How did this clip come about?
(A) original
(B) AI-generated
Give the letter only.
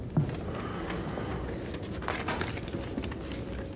A